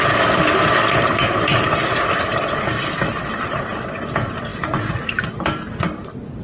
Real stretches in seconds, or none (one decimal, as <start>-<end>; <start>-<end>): none